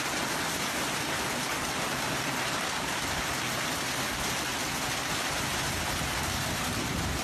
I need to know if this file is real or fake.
real